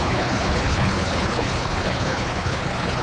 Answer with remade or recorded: remade